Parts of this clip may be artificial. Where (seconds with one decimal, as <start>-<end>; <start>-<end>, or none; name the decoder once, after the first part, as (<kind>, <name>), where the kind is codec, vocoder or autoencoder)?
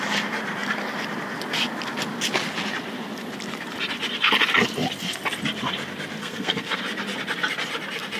6.2-6.8 (codec, SNAC)